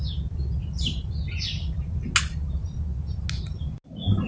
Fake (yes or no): no